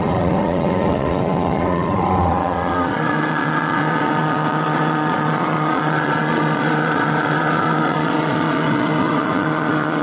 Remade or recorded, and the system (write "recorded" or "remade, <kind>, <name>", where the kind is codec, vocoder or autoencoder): remade, vocoder, Vocos